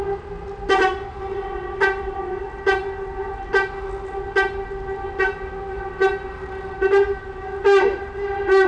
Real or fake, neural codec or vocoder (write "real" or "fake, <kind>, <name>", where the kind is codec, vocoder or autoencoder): real